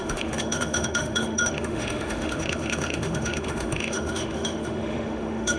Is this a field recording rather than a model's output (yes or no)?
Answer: no